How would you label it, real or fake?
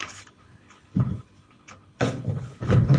fake